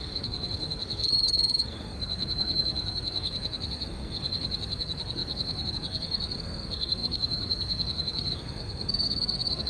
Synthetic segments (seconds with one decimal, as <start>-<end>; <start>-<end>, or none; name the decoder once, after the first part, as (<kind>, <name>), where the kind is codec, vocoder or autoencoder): 0.0-9.7 (codec, SNAC)